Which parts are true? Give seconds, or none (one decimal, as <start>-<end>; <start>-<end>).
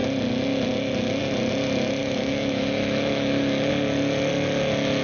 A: 0.0-2.0; 3.7-5.0